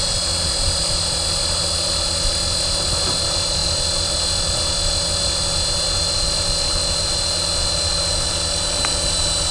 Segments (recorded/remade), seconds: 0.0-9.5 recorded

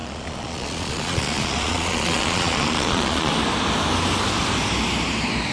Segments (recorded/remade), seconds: 0.0-3.3 remade; 3.3-5.5 recorded

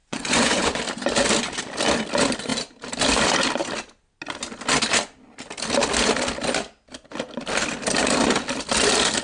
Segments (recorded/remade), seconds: 0.0-0.8 remade; 0.8-9.2 recorded

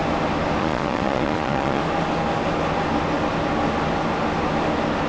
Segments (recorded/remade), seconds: 0.0-0.6 recorded; 0.6-1.8 remade; 1.8-5.1 recorded